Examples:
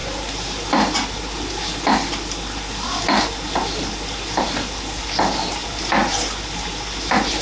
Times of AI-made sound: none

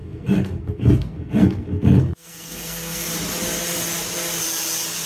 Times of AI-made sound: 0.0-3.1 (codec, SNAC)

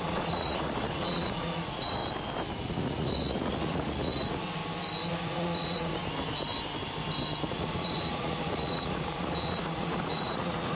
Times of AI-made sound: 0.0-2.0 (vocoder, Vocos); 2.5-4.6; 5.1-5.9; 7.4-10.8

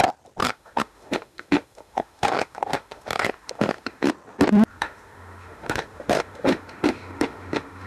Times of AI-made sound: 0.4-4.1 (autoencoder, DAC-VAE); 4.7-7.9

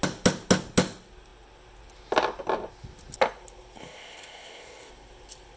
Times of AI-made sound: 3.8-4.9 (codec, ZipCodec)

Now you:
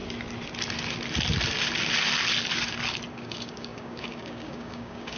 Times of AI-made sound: 3.1-5.2 (codec, DAC)

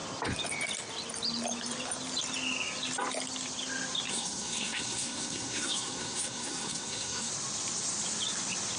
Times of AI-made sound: 4.1-7.3 (codec, SNAC)